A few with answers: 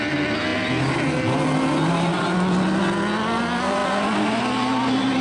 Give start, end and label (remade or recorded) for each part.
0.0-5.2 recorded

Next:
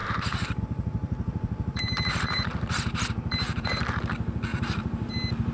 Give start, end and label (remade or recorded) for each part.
0.0-0.6 remade; 0.6-1.0 recorded; 1.0-4.0 remade; 4.0-4.5 recorded; 4.5-5.1 remade; 5.1-5.5 recorded

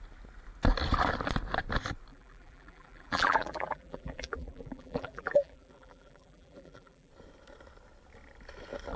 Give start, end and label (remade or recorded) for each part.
0.0-2.1 recorded; 2.1-7.1 remade; 7.1-9.0 recorded

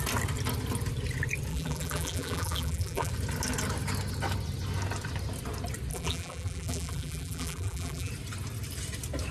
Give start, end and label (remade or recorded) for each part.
0.0-1.5 recorded; 1.5-3.1 remade; 3.1-5.9 recorded; 5.9-8.1 remade; 8.1-9.3 recorded

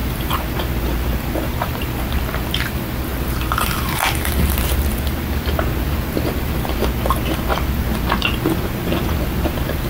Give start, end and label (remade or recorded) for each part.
0.0-3.1 remade; 3.1-5.9 recorded; 5.9-7.5 remade; 7.5-8.7 recorded; 8.7-9.9 remade